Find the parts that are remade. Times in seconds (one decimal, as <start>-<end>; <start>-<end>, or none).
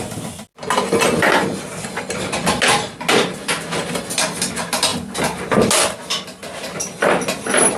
none